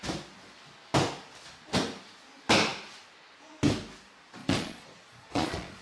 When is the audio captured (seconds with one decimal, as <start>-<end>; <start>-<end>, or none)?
0.0-4.4